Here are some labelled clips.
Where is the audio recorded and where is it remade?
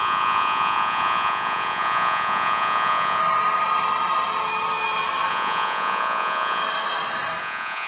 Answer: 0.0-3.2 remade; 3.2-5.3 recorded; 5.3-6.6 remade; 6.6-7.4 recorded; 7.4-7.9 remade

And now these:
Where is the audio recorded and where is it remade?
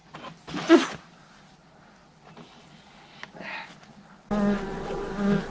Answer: 0.0-5.5 recorded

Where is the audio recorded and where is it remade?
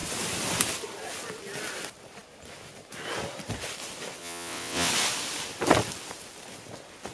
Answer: 0.0-4.2 recorded; 4.2-4.9 remade; 4.9-7.1 recorded